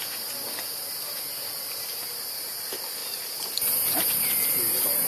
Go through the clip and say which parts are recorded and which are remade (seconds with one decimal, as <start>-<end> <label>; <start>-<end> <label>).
0.0-5.1 recorded